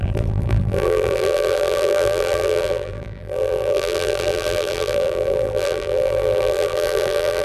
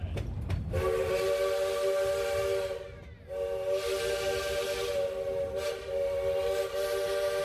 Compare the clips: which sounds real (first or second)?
second